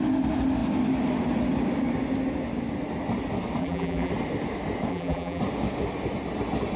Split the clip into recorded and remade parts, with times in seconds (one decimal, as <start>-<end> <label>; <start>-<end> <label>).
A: 0.0-3.6 recorded; 3.6-4.1 remade; 4.1-4.9 recorded; 4.9-5.4 remade; 5.4-6.8 recorded